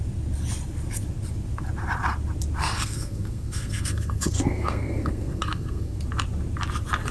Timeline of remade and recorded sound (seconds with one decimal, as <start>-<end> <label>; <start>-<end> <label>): 0.0-2.6 recorded; 2.6-6.0 remade; 6.0-7.1 recorded